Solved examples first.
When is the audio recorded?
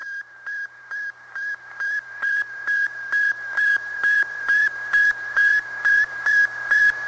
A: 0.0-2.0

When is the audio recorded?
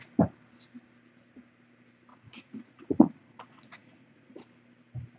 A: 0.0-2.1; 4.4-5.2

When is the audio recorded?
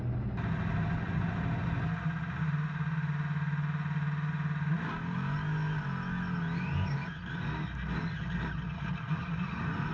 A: 0.0-9.9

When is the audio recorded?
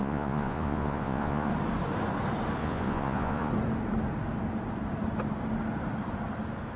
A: 1.5-2.6; 3.5-6.8